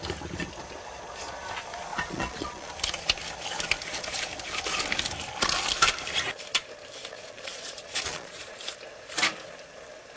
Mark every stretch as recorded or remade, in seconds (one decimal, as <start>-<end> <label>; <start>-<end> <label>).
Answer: 0.0-1.9 recorded; 1.9-2.7 remade; 2.7-7.0 recorded; 7.0-8.6 remade; 8.6-10.2 recorded